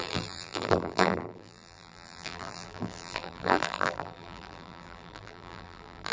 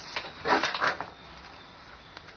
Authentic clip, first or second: second